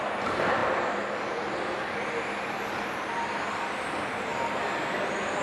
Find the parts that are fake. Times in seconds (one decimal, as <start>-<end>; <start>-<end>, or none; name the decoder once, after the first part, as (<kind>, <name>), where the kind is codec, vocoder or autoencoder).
0.0-0.6 (vocoder, BigVGAN v2); 3.3-5.4